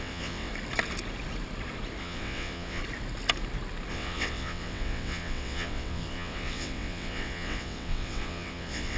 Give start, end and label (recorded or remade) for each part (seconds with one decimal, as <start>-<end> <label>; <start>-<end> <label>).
0.0-0.5 remade; 0.5-2.0 recorded; 2.0-2.8 remade; 2.8-3.9 recorded; 3.9-9.0 remade